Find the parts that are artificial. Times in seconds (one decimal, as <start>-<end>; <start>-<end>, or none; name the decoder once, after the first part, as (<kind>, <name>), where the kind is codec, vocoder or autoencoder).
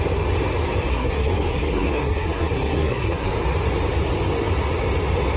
0.9-3.3 (codec, SNAC)